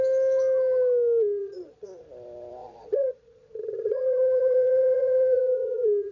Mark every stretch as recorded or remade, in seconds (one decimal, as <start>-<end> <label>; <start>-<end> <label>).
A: 0.0-1.4 recorded; 1.4-2.0 remade; 2.0-2.6 recorded; 2.6-6.1 remade